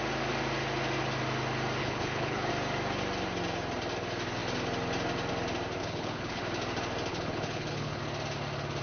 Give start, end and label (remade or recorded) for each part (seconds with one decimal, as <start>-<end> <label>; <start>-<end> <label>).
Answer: 0.0-1.8 recorded; 1.8-2.5 remade; 2.5-5.8 recorded; 5.8-6.4 remade; 6.4-7.1 recorded; 7.1-8.0 remade; 8.0-8.8 recorded